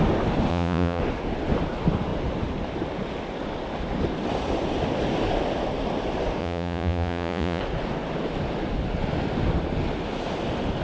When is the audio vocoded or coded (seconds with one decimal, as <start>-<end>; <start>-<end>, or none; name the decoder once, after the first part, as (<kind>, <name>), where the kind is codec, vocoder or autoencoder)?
0.5-1.0 (vocoder, Vocos); 6.4-7.6